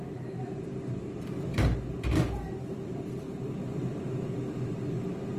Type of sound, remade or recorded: recorded